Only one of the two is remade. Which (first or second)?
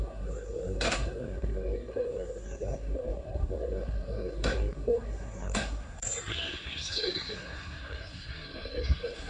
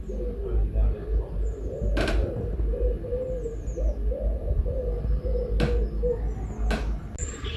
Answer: first